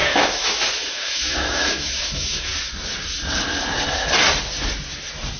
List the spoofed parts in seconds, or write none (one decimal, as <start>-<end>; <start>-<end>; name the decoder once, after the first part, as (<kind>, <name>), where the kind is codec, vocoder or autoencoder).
0.0-2.5 (autoencoder, DAC-VAE)